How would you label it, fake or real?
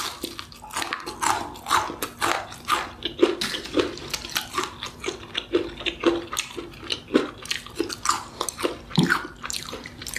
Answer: real